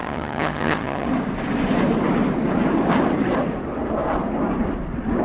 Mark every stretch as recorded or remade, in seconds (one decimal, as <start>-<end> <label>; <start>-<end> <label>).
0.0-1.1 remade; 1.1-5.2 recorded